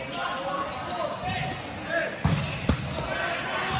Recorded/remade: recorded